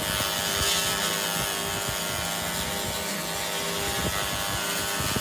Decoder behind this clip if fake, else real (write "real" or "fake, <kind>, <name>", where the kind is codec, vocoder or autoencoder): real